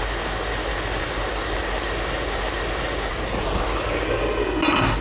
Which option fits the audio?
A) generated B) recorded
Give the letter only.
B